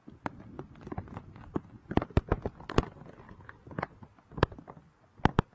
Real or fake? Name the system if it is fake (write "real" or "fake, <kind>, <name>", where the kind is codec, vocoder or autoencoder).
real